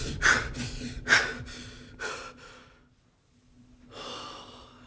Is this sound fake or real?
real